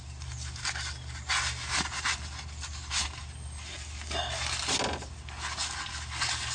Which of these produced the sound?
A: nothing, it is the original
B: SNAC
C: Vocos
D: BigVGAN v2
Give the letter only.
A